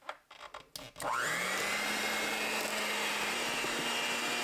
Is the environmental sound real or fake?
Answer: real